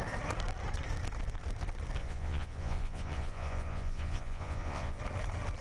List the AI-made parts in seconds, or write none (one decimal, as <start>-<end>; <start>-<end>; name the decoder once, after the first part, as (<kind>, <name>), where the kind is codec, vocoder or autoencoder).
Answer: 2.0-5.0 (vocoder, Vocos)